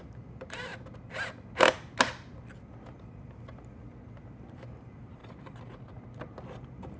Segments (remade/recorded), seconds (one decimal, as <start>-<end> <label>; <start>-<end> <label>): 0.0-0.7 remade; 0.7-4.5 recorded; 4.5-5.2 remade; 5.2-7.0 recorded